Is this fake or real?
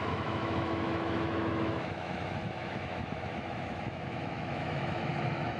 fake